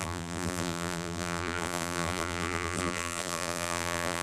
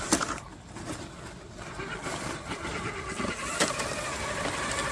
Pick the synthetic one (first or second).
first